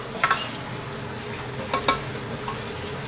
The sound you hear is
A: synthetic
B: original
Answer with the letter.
B